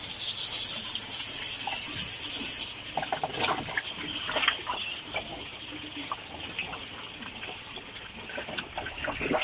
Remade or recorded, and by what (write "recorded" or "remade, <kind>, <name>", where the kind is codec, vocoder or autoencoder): recorded